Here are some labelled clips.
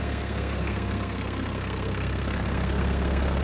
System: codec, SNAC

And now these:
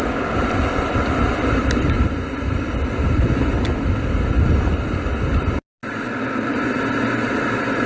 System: none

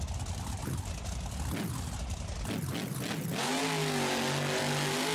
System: none